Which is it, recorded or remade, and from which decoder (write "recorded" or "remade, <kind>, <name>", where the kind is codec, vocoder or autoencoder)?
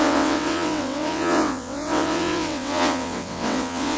remade, vocoder, WaveNeXt